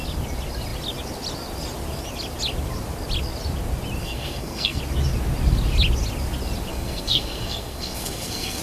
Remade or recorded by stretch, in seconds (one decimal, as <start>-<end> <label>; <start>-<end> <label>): 0.0-4.0 recorded; 4.0-4.8 remade; 4.8-6.7 recorded; 6.7-8.6 remade